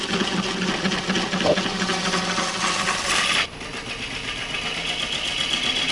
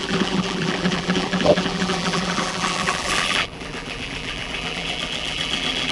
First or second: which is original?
first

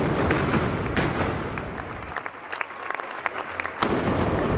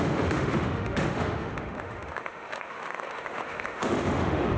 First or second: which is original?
first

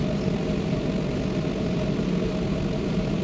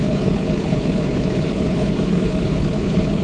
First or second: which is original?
first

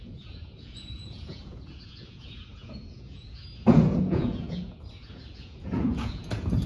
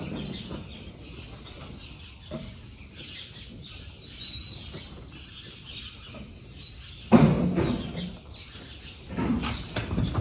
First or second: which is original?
second